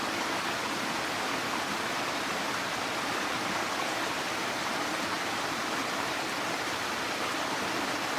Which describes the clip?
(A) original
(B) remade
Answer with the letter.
A